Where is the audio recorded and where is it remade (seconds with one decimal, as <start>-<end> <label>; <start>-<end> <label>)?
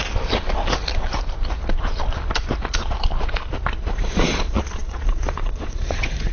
0.0-3.8 recorded; 3.8-6.3 remade